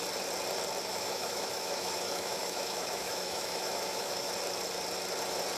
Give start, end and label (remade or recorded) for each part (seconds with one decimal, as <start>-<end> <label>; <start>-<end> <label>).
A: 0.0-0.9 recorded; 0.9-4.3 remade; 4.3-5.6 recorded